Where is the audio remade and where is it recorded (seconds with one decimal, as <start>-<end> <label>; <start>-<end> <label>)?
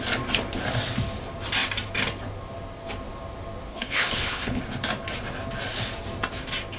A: 0.0-3.7 recorded; 3.7-4.6 remade; 4.6-6.8 recorded